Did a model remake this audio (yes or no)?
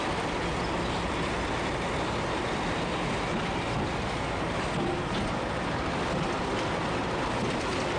no